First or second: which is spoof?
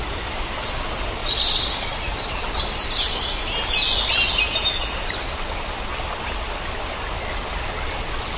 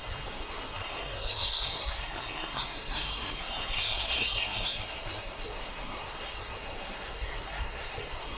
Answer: second